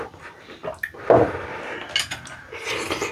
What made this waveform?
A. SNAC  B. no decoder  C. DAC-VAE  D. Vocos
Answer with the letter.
B